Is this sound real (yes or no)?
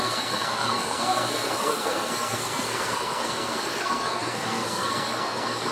no